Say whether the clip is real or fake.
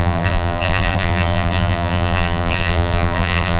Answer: fake